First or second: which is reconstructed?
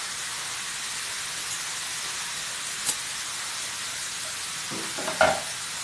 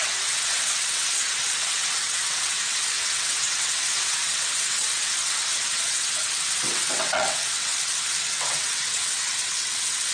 second